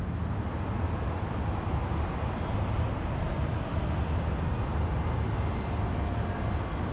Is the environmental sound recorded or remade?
recorded